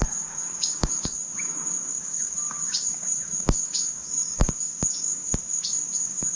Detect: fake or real fake